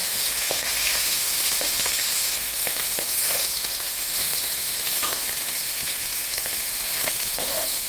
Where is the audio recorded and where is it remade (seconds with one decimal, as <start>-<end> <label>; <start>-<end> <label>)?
0.0-7.9 remade

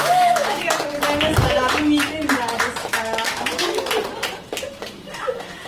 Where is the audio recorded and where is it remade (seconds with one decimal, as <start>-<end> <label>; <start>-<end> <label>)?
0.0-0.6 remade; 0.6-2.8 recorded; 2.8-3.8 remade; 3.8-5.7 recorded

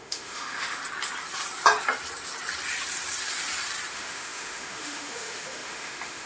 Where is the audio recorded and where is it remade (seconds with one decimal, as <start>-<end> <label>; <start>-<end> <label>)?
0.0-0.8 remade; 0.8-3.9 recorded; 3.9-6.3 remade